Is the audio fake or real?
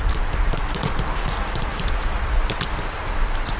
real